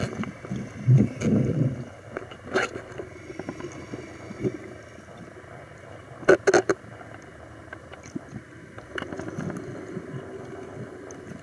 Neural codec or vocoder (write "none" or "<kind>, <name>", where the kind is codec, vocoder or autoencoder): none